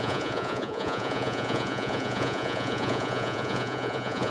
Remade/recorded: remade